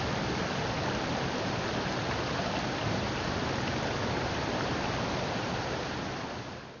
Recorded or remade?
recorded